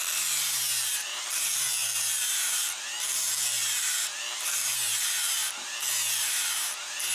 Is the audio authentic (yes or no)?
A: no